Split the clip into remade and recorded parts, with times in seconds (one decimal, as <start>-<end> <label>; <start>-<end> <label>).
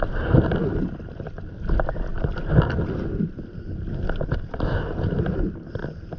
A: 0.0-6.2 recorded